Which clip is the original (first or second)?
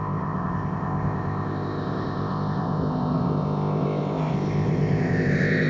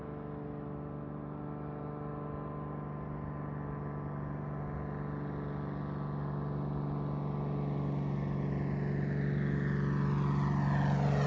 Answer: second